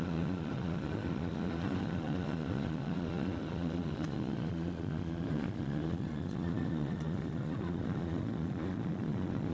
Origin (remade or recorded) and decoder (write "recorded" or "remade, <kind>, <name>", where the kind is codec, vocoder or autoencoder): remade, vocoder, Vocos